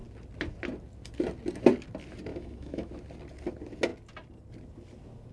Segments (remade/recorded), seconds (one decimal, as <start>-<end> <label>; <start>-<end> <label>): 0.0-2.3 recorded; 2.3-2.9 remade; 2.9-5.3 recorded